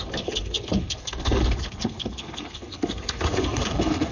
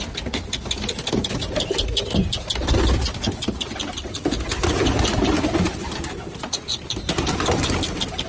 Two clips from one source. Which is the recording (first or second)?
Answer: second